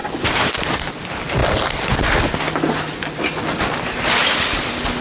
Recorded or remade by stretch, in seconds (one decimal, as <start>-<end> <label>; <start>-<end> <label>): 0.0-5.0 recorded